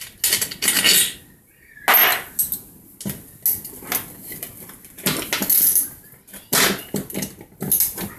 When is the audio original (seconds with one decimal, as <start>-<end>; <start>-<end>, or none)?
0.0-8.2